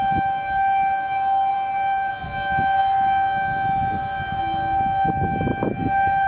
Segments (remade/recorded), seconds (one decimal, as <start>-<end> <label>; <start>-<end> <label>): 0.0-1.5 recorded; 1.5-2.1 remade; 2.1-5.5 recorded; 5.5-6.3 remade